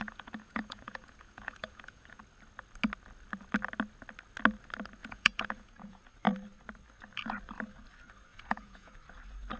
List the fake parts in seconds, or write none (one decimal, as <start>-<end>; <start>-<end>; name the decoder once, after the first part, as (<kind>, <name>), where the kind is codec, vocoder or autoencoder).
0.0-2.2 (vocoder, Vocos); 5.0-6.0; 8.3-8.9